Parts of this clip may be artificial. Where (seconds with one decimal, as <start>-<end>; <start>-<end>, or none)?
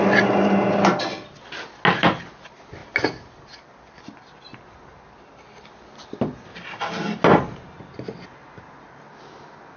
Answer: none